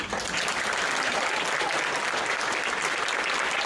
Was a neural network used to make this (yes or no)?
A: no